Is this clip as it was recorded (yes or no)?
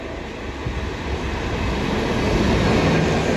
yes